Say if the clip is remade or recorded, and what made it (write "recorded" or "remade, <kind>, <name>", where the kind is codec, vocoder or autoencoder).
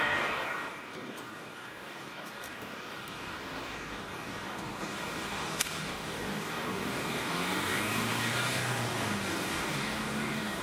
remade, codec, DAC